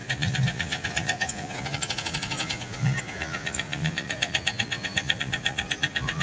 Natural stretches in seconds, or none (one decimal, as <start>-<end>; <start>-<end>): none